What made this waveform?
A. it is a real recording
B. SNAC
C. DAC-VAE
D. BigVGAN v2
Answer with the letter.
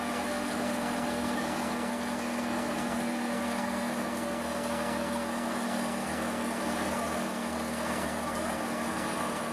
B